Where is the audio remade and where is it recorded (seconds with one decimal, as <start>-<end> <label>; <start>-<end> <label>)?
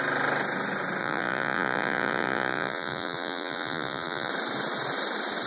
0.0-1.0 recorded; 1.0-4.3 remade; 4.3-5.5 recorded